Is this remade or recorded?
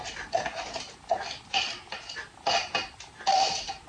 recorded